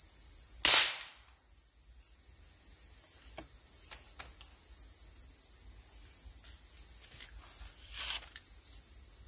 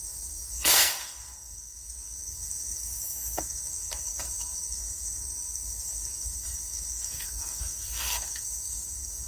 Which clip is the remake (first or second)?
second